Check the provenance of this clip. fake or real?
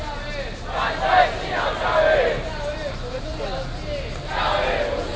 real